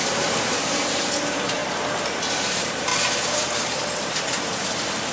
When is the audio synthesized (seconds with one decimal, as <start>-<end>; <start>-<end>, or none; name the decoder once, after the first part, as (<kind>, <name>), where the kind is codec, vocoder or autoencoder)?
0.0-1.6 (vocoder, BigVGAN v2); 2.2-5.1